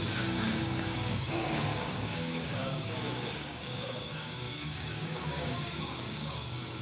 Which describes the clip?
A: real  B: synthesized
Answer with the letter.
B